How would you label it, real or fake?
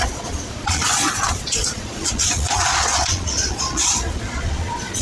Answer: fake